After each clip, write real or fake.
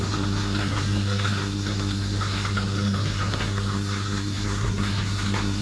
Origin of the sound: fake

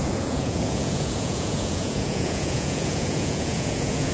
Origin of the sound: fake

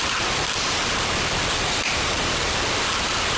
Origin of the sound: fake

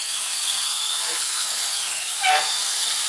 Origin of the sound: fake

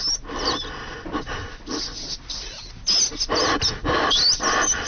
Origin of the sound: real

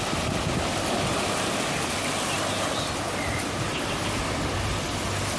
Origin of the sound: real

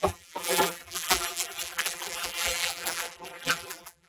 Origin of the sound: fake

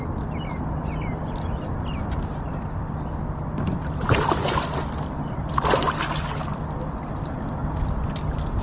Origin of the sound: real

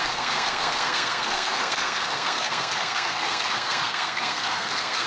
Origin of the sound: fake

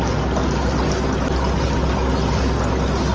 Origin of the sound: real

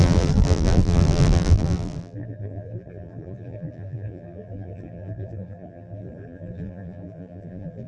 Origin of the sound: fake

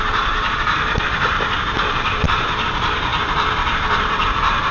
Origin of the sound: fake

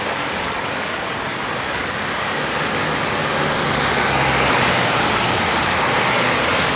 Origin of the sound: fake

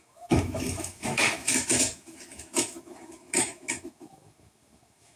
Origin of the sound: fake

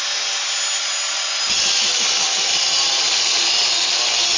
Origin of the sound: real